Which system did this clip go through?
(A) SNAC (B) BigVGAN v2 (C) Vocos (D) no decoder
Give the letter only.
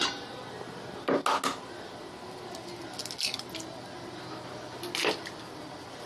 D